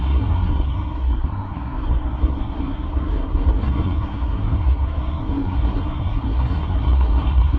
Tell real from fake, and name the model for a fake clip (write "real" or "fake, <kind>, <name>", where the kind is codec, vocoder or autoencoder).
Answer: fake, codec, SNAC